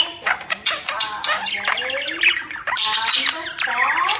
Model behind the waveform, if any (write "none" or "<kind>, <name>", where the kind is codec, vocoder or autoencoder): none